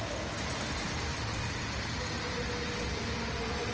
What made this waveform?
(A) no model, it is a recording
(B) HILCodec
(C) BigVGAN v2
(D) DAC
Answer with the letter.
A